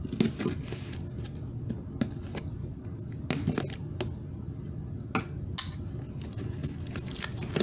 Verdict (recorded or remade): recorded